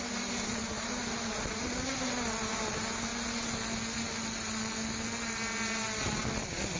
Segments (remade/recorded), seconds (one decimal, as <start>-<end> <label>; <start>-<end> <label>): 0.0-3.1 remade; 3.1-6.8 recorded